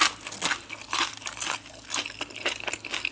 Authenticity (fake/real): real